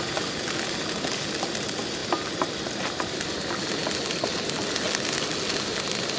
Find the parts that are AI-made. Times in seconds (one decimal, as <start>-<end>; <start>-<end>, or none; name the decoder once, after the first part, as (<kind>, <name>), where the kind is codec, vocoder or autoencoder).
none